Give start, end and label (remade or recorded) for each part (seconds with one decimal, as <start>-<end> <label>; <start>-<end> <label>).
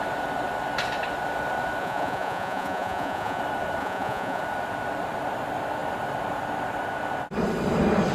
0.0-1.8 recorded; 1.8-3.4 remade; 3.4-3.8 recorded; 3.8-4.4 remade; 4.4-8.1 recorded